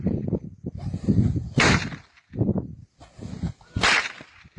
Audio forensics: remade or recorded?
recorded